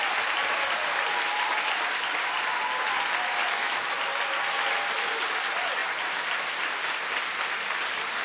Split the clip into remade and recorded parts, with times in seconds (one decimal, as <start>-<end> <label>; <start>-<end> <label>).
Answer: 0.0-0.8 recorded; 0.8-1.8 remade; 1.8-8.2 recorded

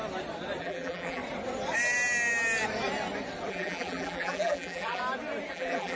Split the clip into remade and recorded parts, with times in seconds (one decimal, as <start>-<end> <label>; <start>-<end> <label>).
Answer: 0.0-0.6 recorded; 0.6-1.2 remade; 1.2-3.5 recorded; 3.5-5.0 remade; 5.0-5.5 recorded; 5.5-6.0 remade

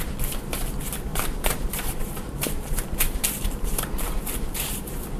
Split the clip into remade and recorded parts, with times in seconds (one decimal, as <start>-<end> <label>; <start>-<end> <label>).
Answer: 0.0-1.1 recorded; 1.1-4.2 remade; 4.2-5.2 recorded

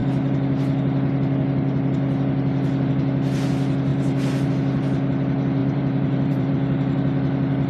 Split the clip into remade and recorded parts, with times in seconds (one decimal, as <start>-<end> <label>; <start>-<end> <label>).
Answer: 0.0-3.9 recorded; 3.9-4.5 remade; 4.5-5.6 recorded; 5.6-6.5 remade; 6.5-7.7 recorded

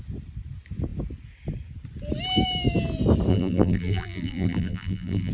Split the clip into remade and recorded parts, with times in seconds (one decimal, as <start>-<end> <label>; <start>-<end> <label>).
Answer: 0.0-3.3 recorded; 3.3-5.3 remade

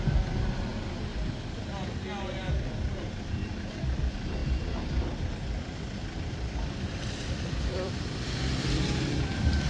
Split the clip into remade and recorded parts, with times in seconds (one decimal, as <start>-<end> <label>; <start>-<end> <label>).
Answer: 0.0-0.7 remade; 0.7-2.9 recorded; 2.9-9.7 remade